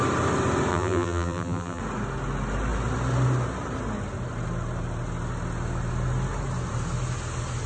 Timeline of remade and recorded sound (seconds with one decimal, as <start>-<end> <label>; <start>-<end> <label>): 0.0-0.7 recorded; 0.7-1.8 remade; 1.8-7.7 recorded